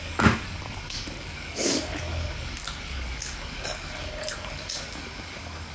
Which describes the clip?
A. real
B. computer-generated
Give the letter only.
B